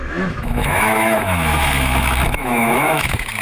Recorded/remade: remade